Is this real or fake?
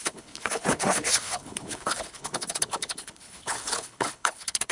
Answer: fake